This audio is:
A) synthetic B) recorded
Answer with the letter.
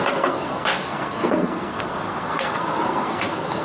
A